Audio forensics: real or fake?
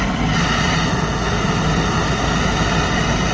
real